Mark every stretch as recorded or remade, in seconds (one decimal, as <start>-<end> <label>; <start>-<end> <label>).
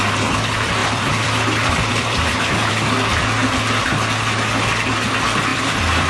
0.0-0.8 recorded; 0.8-2.7 remade; 2.7-5.5 recorded; 5.5-6.1 remade